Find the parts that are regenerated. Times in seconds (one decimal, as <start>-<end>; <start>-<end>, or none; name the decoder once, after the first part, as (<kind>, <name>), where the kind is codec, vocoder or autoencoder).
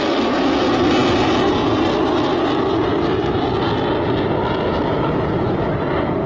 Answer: none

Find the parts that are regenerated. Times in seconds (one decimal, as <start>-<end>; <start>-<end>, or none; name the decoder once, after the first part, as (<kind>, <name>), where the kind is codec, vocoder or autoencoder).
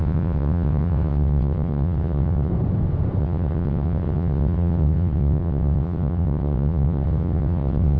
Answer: 0.0-2.5 (vocoder, WaveNeXt); 3.2-8.0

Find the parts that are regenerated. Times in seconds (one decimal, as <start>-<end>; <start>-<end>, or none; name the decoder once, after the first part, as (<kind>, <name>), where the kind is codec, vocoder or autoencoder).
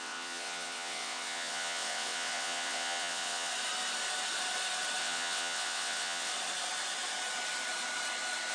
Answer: 0.0-3.5 (vocoder, WaveNeXt); 5.0-6.3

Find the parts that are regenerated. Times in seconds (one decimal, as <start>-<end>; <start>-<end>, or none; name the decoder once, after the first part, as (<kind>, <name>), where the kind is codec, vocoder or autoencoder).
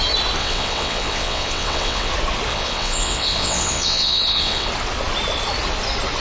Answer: 0.4-2.1 (vocoder, WaveNeXt); 2.5-4.7